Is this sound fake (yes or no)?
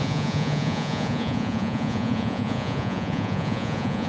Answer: yes